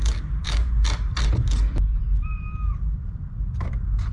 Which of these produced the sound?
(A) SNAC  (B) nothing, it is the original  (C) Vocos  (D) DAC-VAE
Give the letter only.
B